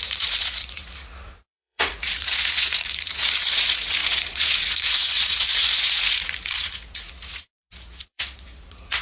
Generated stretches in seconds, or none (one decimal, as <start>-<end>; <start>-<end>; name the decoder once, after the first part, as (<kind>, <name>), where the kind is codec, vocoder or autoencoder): 0.0-9.0 (vocoder, Vocos)

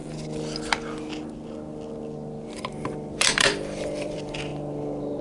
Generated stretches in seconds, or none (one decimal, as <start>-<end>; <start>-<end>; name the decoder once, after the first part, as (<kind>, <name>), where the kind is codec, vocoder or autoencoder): 3.1-4.5 (vocoder, BigVGAN v2)

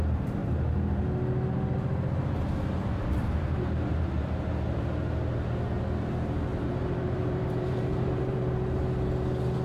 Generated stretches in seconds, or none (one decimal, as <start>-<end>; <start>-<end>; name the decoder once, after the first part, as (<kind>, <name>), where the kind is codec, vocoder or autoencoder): 0.4-1.0 (vocoder, BigVGAN v2); 2.8-4.5; 6.5-8.4

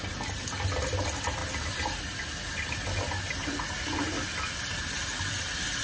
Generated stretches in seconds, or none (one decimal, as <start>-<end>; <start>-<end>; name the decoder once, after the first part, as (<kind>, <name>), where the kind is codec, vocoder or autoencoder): none

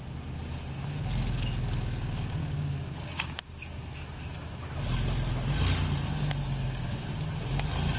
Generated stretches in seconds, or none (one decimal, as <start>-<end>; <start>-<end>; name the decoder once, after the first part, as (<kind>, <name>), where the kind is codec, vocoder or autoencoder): 2.4-3.7 (codec, DAC); 6.6-7.1

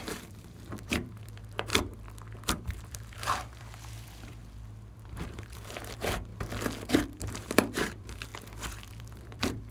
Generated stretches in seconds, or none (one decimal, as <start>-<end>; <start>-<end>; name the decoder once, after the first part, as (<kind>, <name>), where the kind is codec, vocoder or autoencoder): 0.0-1.7 (vocoder, BigVGAN v2); 2.5-4.4; 4.9-6.3; 6.9-8.3; 8.9-9.7

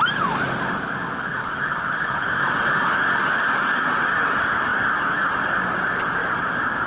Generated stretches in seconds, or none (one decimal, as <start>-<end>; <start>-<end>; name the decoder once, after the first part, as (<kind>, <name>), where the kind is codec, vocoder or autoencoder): 1.3-4.1 (vocoder, BigVGAN v2)